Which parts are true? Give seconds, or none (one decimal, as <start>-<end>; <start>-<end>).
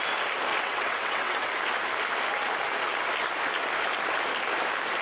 0.0-0.5; 1.5-5.0